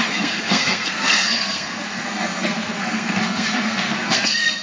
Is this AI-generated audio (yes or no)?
yes